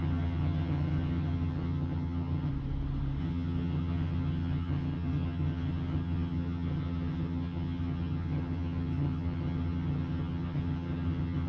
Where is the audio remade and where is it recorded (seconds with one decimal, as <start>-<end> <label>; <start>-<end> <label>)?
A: 0.0-2.5 remade; 2.5-3.2 recorded; 3.2-11.5 remade